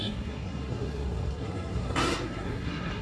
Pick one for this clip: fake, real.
fake